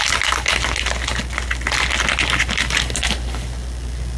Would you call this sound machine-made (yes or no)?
no